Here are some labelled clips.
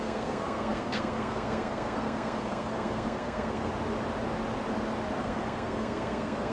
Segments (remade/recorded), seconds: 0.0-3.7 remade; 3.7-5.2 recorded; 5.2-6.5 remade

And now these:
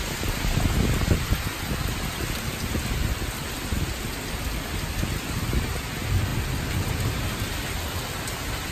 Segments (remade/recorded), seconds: 0.0-8.7 recorded

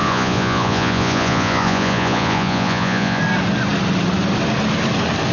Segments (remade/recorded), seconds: 0.0-3.2 remade; 3.2-5.3 recorded

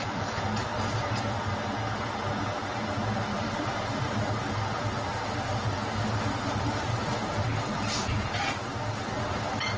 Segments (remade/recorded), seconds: 0.0-3.3 recorded; 3.3-4.3 remade; 4.3-5.1 recorded; 5.1-7.7 remade; 7.7-9.8 recorded

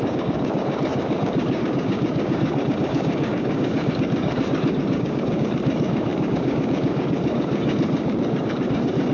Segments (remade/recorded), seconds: 0.0-9.1 remade

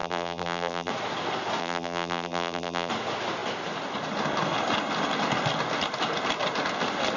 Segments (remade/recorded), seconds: 0.0-0.9 remade; 0.9-1.6 recorded; 1.6-2.9 remade; 2.9-7.2 recorded

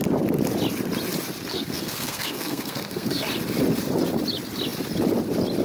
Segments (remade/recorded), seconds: 0.0-1.5 recorded; 1.5-3.2 remade; 3.2-5.6 recorded